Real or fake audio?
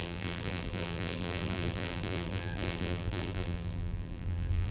fake